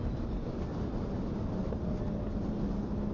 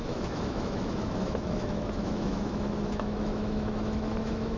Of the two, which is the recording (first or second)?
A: first